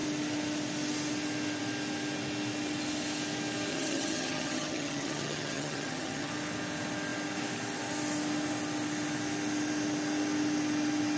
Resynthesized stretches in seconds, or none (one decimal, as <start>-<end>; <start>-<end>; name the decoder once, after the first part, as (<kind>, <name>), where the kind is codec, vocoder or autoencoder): 3.7-6.3 (vocoder, HiFi-GAN)